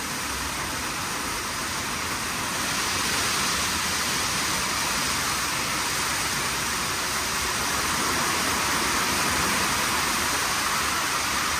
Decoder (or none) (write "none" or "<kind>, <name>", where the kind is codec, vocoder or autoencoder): none